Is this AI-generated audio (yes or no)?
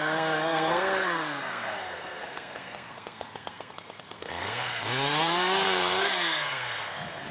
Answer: yes